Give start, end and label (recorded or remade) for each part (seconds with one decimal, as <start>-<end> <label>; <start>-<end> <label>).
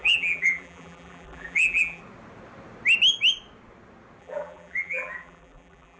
0.0-2.0 remade; 2.0-4.2 recorded; 4.2-6.0 remade